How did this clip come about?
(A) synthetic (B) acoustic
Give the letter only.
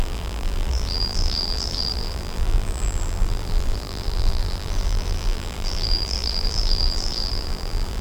A